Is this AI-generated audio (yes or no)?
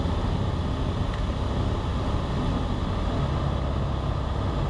no